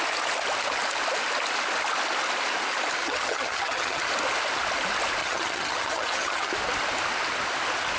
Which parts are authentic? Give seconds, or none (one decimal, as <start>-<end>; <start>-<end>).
0.0-3.0; 4.0-5.2; 6.5-8.0